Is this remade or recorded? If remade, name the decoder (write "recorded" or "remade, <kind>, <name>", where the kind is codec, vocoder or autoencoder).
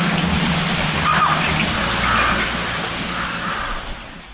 recorded